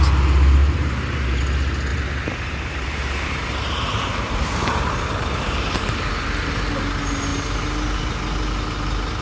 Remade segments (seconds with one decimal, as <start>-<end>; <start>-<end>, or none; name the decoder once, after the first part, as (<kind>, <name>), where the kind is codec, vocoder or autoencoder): 0.6-1.4 (vocoder, BigVGAN v2); 1.9-6.1